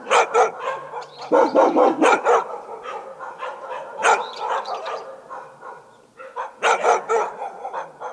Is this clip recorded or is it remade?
recorded